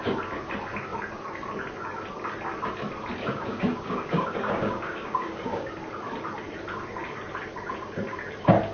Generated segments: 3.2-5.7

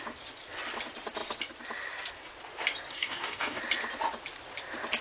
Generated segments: 2.9-3.6

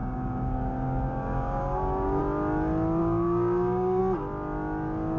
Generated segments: 0.0-2.2; 3.0-4.0

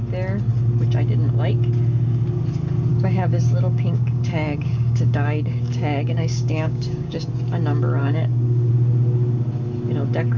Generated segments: 2.9-7.3; 8.0-8.7